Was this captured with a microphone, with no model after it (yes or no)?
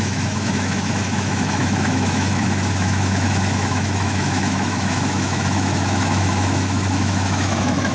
no